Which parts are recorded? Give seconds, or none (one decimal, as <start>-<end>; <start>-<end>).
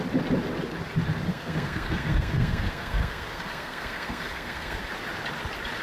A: 0.0-1.3; 4.8-5.8